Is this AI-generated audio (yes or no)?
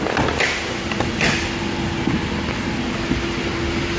no